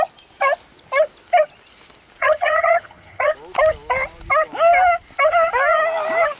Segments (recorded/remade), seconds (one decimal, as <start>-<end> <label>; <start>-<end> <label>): 0.0-2.2 recorded; 2.2-3.3 remade; 3.3-6.4 recorded